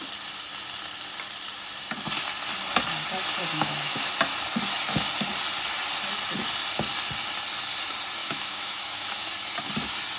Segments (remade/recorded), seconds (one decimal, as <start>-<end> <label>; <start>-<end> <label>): 0.0-3.5 recorded; 3.5-4.1 remade; 4.1-8.2 recorded; 8.2-9.3 remade; 9.3-10.2 recorded